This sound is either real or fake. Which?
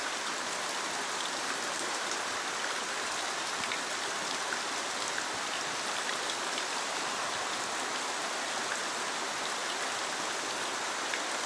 real